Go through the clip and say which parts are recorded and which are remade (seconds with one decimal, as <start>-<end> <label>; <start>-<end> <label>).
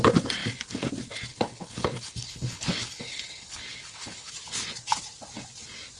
0.0-1.3 recorded; 1.3-4.3 remade; 4.3-6.0 recorded